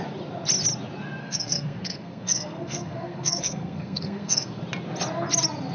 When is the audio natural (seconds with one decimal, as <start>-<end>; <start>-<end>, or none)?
0.0-1.2; 4.6-5.7